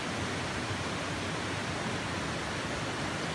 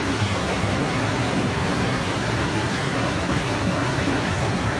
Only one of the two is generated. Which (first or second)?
second